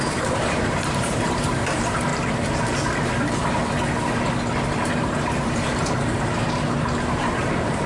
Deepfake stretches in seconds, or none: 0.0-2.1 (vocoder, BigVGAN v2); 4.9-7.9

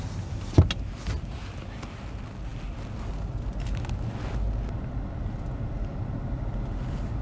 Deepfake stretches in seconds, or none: none

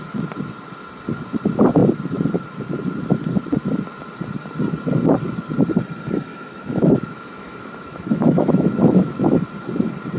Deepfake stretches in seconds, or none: 6.3-9.2 (autoencoder, DAC-VAE)

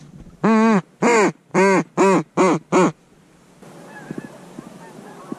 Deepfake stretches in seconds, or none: none

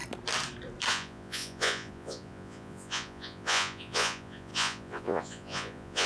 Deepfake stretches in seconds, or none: 0.9-6.1 (vocoder, Vocos)

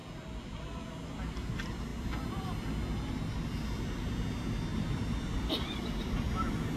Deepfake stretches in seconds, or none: 4.7-6.3 (vocoder, BigVGAN v2)

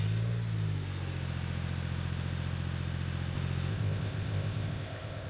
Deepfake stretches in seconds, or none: 3.7-5.3 (codec, ZipCodec)

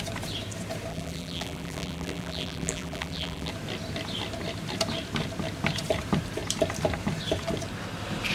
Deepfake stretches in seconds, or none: 0.9-3.5 (vocoder, BigVGAN v2)